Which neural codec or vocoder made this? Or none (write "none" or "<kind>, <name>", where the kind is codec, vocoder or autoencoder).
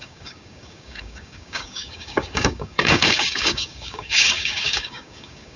codec, DAC